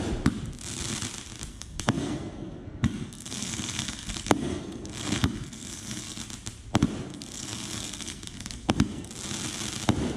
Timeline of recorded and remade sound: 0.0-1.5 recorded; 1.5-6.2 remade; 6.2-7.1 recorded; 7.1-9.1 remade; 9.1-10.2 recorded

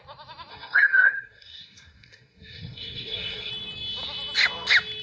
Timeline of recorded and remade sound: 0.0-0.5 recorded; 0.5-3.5 remade; 3.5-5.0 recorded

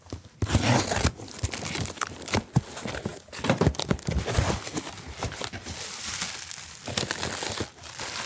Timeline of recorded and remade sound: 0.0-8.3 recorded

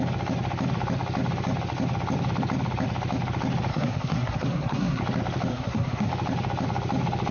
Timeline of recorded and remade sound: 0.0-3.7 recorded; 3.7-5.0 remade; 5.0-5.5 recorded; 5.5-6.1 remade; 6.1-7.3 recorded

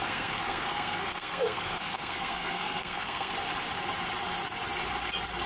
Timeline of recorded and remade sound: 0.0-3.3 remade; 3.3-5.5 recorded

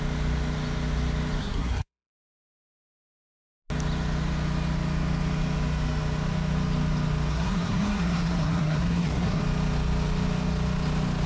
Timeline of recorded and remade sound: 0.0-1.4 recorded; 1.4-2.2 remade; 2.2-7.3 recorded; 7.3-9.4 remade; 9.4-11.3 recorded

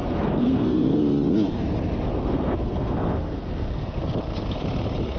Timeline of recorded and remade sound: 0.0-1.0 remade; 1.0-2.1 recorded; 2.1-4.0 remade; 4.0-5.2 recorded

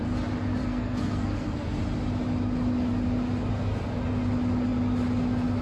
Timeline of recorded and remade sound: 0.0-0.6 recorded; 0.6-1.8 remade; 1.8-5.6 recorded